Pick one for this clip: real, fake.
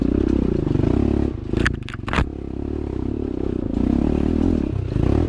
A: real